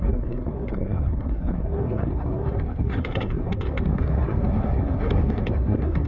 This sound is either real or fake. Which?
fake